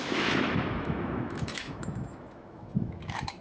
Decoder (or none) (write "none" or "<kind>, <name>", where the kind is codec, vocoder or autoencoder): autoencoder, DAC-VAE